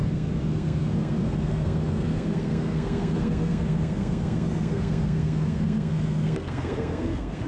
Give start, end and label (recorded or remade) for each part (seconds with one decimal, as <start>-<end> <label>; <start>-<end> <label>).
0.0-7.5 remade